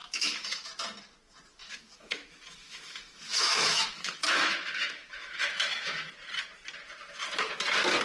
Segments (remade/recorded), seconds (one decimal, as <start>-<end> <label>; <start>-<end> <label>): 0.0-0.7 remade; 0.7-1.6 recorded; 1.6-6.1 remade; 6.1-8.0 recorded